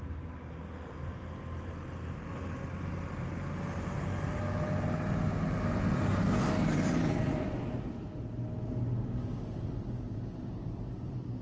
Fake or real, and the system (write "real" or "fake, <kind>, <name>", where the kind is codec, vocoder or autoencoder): real